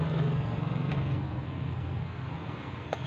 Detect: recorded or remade remade